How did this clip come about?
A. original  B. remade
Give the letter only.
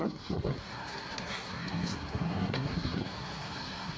B